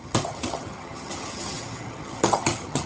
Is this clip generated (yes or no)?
yes